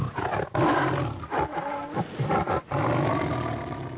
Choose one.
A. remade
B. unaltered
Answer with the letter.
B